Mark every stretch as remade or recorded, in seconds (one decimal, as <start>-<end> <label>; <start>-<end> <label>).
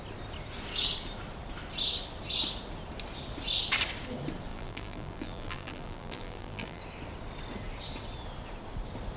0.0-4.5 recorded; 4.5-6.8 remade; 6.8-9.2 recorded